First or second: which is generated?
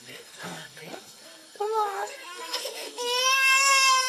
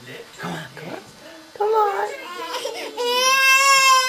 first